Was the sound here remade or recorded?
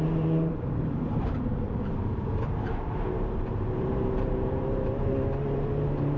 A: remade